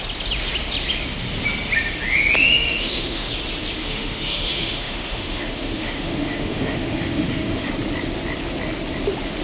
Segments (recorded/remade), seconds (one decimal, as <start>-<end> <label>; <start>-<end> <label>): 0.0-2.4 recorded; 2.4-3.3 remade; 3.3-3.8 recorded; 3.8-7.7 remade; 7.7-9.4 recorded